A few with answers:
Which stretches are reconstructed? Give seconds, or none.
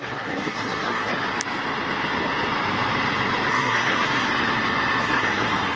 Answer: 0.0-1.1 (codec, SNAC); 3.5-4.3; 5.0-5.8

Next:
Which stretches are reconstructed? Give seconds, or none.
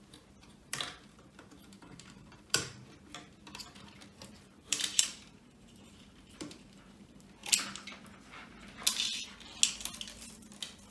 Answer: 0.0-2.8 (vocoder, BigVGAN v2); 3.8-7.4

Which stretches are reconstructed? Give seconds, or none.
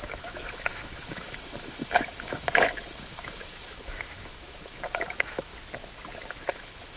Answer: 0.0-5.5 (autoencoder, DAC-VAE); 6.3-7.0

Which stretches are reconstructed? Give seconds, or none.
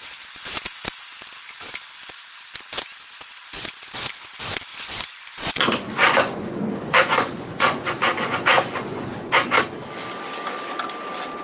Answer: 4.7-9.6 (vocoder, Vocos)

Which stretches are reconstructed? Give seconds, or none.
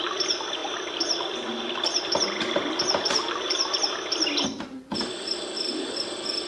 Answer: 0.0-0.6 (vocoder, BigVGAN v2); 3.7-6.5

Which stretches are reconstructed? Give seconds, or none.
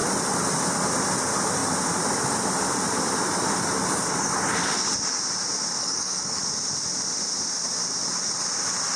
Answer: 5.8-6.4 (codec, DAC)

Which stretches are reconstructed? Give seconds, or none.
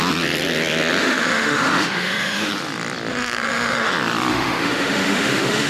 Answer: 1.0-2.5 (autoencoder, DAC-VAE); 3.1-3.9; 4.3-5.7